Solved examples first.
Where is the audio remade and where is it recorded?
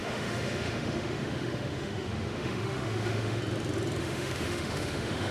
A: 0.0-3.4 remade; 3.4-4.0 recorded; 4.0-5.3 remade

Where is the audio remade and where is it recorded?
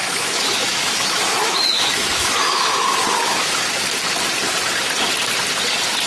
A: 0.0-3.7 remade; 3.7-6.1 recorded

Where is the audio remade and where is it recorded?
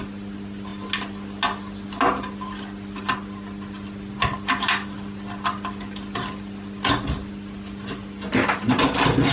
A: 0.0-9.3 recorded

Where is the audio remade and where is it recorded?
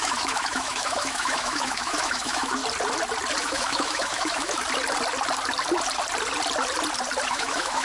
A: 0.0-2.6 remade; 2.6-3.4 recorded; 3.4-4.6 remade; 4.6-7.3 recorded; 7.3-7.8 remade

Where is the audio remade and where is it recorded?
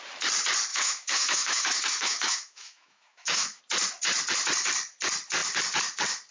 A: 0.0-0.7 recorded; 0.7-3.6 remade; 3.6-6.3 recorded